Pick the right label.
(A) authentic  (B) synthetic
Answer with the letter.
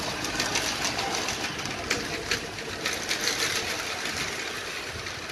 A